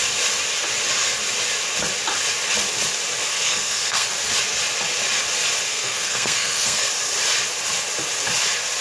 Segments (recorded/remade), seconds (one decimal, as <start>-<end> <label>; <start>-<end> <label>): 0.0-3.3 recorded; 3.3-4.1 remade; 4.1-5.7 recorded; 5.7-6.9 remade; 6.9-8.8 recorded